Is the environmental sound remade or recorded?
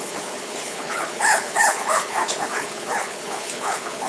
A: remade